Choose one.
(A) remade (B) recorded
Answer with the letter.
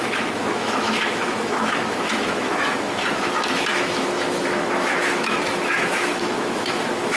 A